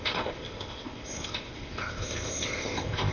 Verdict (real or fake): fake